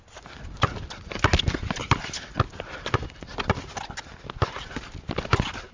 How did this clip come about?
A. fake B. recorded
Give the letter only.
B